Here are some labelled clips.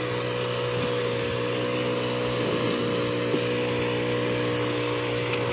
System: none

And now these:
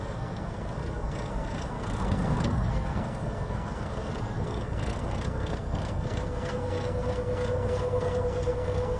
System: codec, SNAC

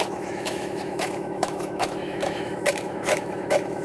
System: autoencoder, DAC-VAE